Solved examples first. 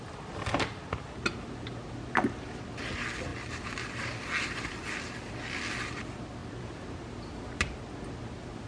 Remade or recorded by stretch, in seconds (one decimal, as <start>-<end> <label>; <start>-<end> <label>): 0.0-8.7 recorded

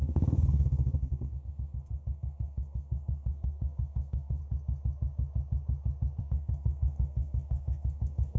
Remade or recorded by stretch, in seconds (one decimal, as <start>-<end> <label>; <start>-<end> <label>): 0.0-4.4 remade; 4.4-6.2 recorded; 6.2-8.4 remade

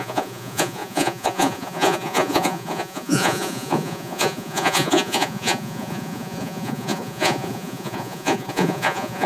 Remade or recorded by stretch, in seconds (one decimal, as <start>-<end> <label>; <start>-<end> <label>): 0.0-9.3 remade

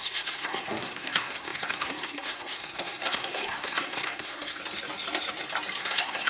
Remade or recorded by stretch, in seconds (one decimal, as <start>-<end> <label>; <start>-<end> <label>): 0.0-4.6 remade; 4.6-5.8 recorded; 5.8-6.3 remade

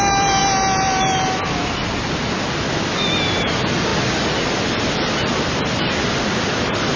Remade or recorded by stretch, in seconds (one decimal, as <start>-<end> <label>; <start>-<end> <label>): 0.0-7.0 recorded

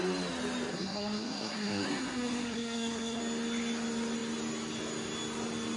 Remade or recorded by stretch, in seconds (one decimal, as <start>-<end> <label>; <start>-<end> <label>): 0.0-0.7 recorded; 0.7-3.2 remade; 3.2-5.8 recorded

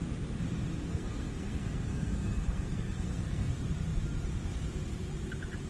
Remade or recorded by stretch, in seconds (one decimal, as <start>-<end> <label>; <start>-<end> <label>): 0.0-0.9 recorded; 0.9-3.5 remade; 3.5-5.7 recorded

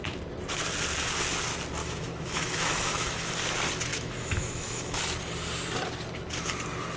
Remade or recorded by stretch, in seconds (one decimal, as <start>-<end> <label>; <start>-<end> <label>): 0.0-1.8 recorded; 1.8-3.3 remade; 3.3-3.9 recorded; 3.9-5.0 remade; 5.0-7.0 recorded